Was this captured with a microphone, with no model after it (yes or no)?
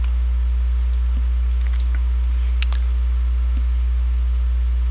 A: yes